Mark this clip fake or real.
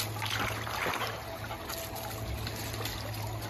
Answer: real